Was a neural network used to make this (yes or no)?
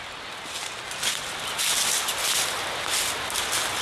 no